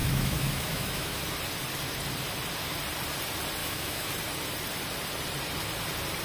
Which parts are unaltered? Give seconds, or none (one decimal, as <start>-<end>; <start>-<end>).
1.2-3.6; 4.1-6.2